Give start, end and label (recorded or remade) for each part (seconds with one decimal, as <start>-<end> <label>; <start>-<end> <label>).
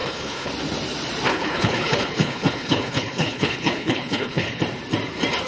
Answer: 0.0-0.5 remade; 0.5-1.3 recorded; 1.3-4.6 remade; 4.6-5.5 recorded